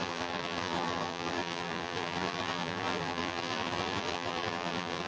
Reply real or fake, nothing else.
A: fake